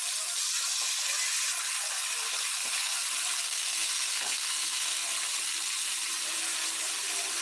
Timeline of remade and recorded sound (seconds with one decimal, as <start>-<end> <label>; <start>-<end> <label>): 0.0-3.4 recorded; 3.4-5.1 remade; 5.1-7.4 recorded

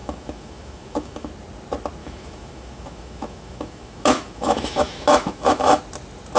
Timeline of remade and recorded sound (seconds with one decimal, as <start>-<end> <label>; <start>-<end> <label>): 0.0-1.3 remade; 1.3-2.0 recorded; 2.0-5.8 remade; 5.8-6.4 recorded

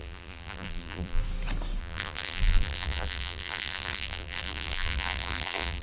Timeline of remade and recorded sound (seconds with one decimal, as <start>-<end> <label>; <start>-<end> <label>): 0.0-1.2 remade; 1.2-1.8 recorded; 1.8-5.8 remade